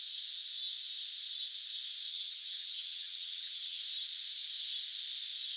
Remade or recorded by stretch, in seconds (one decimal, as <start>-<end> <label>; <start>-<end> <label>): 0.0-2.1 recorded; 2.1-3.8 remade; 3.8-5.6 recorded